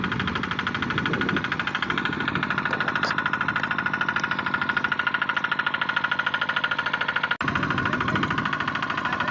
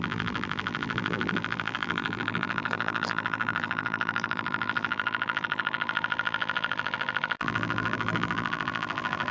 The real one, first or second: first